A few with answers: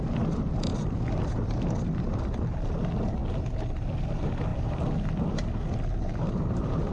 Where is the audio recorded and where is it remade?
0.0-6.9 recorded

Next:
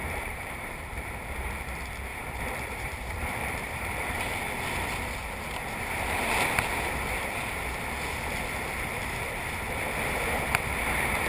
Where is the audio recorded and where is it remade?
0.0-1.1 remade; 1.1-2.1 recorded; 2.1-4.2 remade; 4.2-11.3 recorded

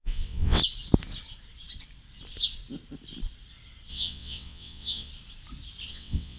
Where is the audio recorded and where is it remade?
0.0-0.6 remade; 0.6-3.9 recorded; 3.9-5.1 remade; 5.1-5.9 recorded; 5.9-6.4 remade

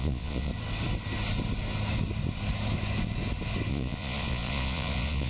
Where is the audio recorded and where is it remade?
0.0-0.5 remade; 0.5-3.7 recorded; 3.7-5.3 remade

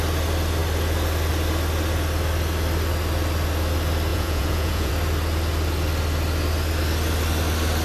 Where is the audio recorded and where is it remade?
0.0-4.1 recorded; 4.1-4.9 remade; 4.9-7.8 recorded

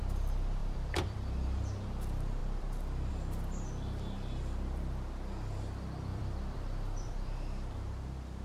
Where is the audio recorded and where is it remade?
0.0-0.6 recorded; 0.6-1.6 remade; 1.6-2.4 recorded; 2.4-3.1 remade; 3.1-6.1 recorded; 6.1-7.9 remade; 7.9-8.4 recorded

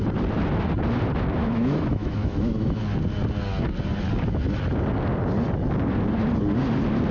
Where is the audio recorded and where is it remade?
0.0-1.4 recorded; 1.4-2.8 remade; 2.8-7.1 recorded